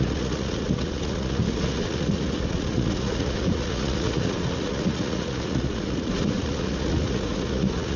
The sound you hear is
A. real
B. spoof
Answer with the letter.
B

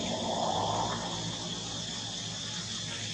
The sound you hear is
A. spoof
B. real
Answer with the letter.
B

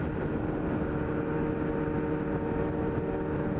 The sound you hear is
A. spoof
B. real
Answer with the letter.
B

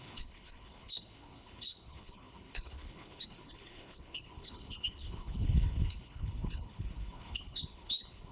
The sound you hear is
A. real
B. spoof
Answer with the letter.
B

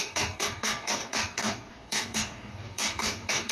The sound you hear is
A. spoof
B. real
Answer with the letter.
A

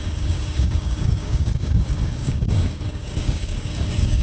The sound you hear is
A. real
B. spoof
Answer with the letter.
B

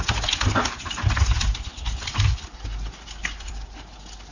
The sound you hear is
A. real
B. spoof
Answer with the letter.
A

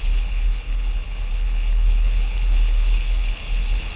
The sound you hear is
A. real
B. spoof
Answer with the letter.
B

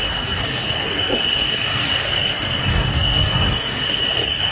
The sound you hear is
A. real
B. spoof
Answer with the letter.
B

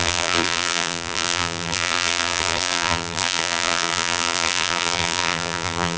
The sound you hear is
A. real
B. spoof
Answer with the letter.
B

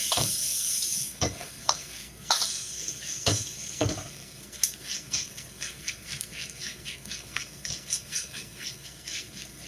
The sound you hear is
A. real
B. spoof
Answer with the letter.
B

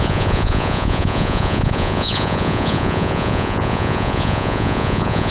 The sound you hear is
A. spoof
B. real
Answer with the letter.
A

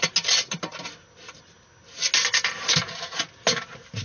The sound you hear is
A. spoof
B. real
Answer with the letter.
B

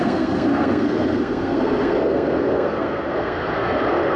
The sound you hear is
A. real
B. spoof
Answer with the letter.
B